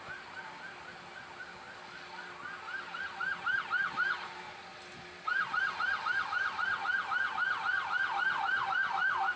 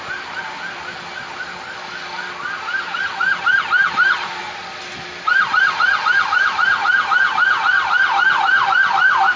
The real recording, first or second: first